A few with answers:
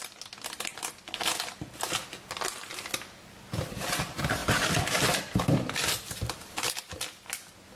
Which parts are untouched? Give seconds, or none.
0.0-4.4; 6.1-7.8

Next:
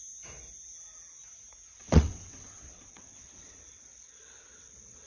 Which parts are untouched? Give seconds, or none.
0.0-1.7

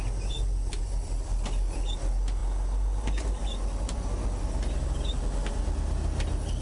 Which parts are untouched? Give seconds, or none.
0.0-6.6

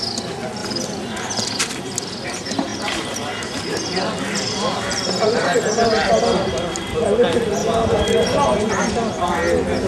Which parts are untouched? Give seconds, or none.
0.0-2.7; 5.6-7.6; 8.8-9.9

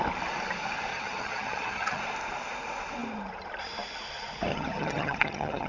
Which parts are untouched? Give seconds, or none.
0.0-0.9; 2.0-4.5

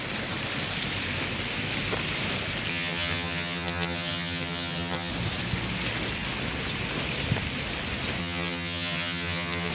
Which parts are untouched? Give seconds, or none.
0.0-2.7; 5.1-8.2

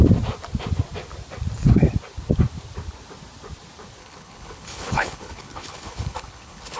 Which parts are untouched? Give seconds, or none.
0.0-4.0